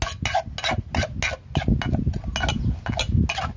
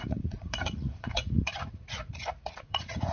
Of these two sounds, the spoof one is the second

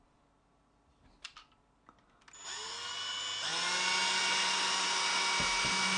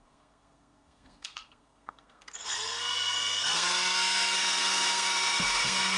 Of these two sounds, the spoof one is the second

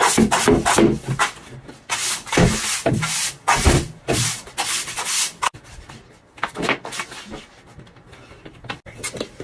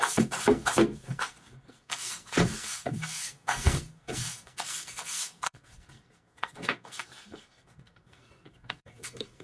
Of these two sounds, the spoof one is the second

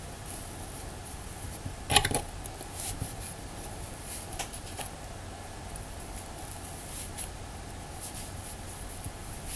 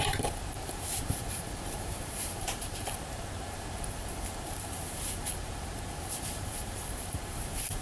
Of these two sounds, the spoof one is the second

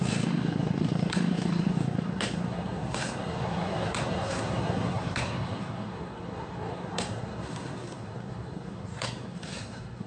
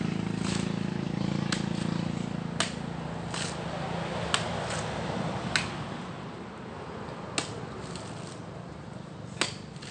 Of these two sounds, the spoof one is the first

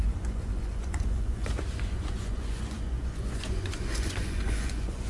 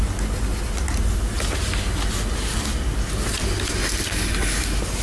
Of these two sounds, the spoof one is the first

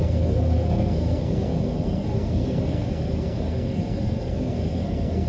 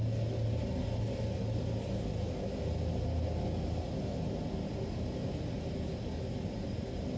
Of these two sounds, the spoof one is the first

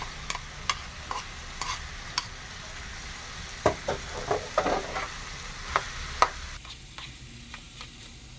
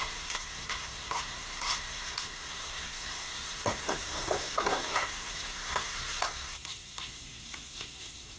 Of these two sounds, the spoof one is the second